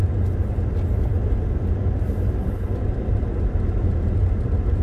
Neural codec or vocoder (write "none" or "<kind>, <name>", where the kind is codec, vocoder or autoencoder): none